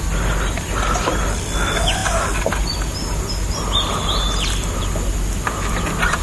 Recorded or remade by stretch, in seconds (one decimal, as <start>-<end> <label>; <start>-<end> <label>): 0.0-6.2 recorded